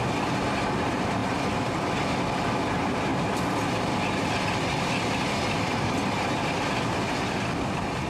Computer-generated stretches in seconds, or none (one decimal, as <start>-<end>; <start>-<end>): none